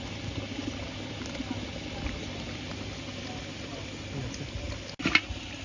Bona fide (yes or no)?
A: yes